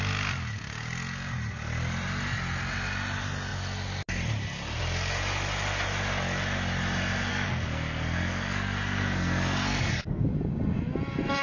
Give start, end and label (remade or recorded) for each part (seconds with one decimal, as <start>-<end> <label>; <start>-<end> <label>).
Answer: 0.0-7.3 recorded; 7.3-10.2 remade; 10.2-11.4 recorded

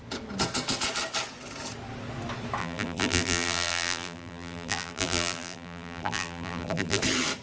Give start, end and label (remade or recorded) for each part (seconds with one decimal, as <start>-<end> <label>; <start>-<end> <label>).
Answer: 0.0-2.6 recorded; 2.6-7.0 remade; 7.0-7.4 recorded

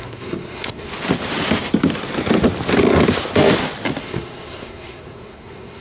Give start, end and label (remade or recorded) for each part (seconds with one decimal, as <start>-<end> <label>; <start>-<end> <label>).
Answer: 0.0-0.9 remade; 0.9-4.0 recorded; 4.0-5.8 remade

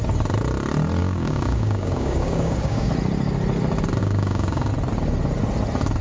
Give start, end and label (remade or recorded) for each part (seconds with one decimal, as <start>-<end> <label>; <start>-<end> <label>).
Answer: 0.0-1.0 recorded; 1.0-2.9 remade; 2.9-4.0 recorded; 4.0-4.7 remade; 4.7-6.0 recorded

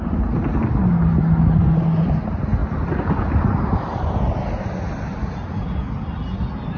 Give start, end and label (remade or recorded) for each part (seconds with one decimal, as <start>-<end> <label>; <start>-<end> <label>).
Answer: 0.0-6.8 recorded

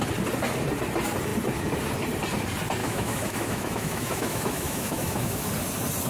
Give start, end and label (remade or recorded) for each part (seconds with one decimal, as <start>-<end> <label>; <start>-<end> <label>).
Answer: 0.0-2.8 recorded; 2.8-5.5 remade; 5.5-6.1 recorded

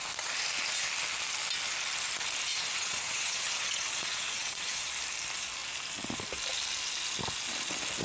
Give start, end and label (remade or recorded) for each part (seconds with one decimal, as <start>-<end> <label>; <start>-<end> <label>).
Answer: 0.0-2.5 recorded; 2.5-4.9 remade; 4.9-8.0 recorded